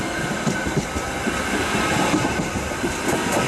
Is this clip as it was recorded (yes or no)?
yes